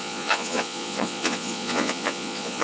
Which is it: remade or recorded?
remade